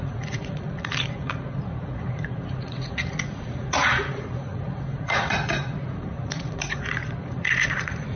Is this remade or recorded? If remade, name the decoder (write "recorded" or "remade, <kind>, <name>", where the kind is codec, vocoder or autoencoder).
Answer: remade, vocoder, Vocos